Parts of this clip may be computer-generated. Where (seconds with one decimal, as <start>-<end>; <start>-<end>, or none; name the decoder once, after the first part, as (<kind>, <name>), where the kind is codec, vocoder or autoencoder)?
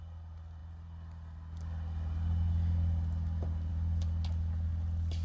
none